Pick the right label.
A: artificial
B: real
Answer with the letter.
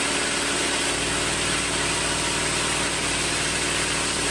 B